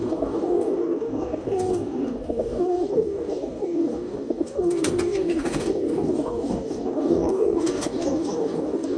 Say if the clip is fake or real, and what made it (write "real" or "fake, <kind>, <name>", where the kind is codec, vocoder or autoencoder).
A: fake, codec, DAC